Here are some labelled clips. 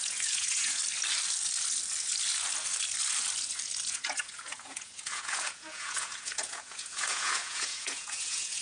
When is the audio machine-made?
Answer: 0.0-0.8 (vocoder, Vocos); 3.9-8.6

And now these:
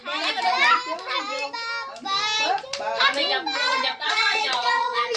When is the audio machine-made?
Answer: 3.6-5.2 (vocoder, Vocos)

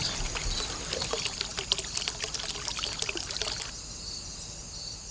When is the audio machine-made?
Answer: none